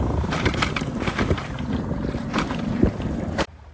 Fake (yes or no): yes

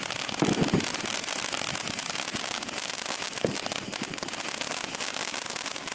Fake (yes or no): no